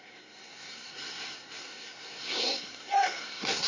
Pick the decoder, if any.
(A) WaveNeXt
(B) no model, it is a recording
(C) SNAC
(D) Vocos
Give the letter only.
C